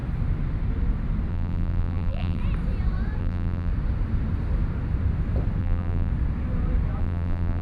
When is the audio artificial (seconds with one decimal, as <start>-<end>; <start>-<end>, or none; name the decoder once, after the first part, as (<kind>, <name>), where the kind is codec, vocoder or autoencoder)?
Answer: 1.3-2.4 (vocoder, BigVGAN v2); 3.2-3.7; 5.6-6.1; 7.0-7.6